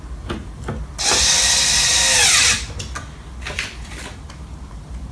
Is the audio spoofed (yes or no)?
no